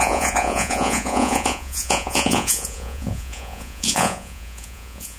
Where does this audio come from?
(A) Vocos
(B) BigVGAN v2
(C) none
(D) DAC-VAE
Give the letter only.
A